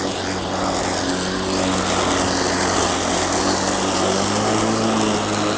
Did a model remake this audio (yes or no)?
no